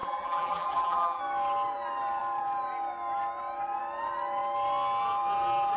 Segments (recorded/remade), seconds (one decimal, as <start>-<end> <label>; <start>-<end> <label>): 0.0-1.2 remade; 1.2-5.8 recorded